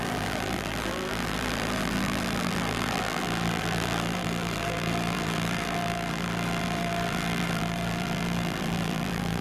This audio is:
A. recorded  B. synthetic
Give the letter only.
B